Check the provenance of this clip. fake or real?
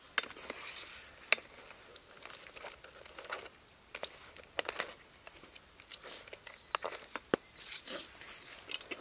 real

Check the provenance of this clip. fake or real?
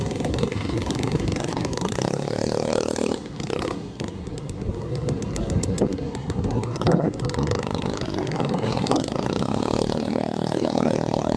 fake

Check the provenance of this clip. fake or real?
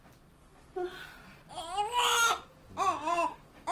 real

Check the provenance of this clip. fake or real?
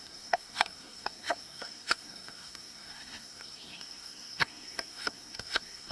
fake